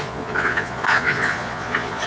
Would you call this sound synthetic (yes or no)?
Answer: yes